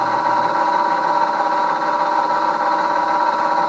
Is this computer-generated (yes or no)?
no